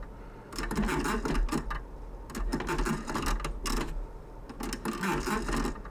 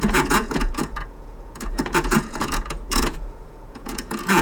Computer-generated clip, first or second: second